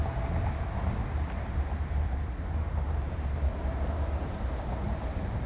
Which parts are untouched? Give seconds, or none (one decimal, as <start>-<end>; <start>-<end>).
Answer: 0.0-2.9; 3.5-5.5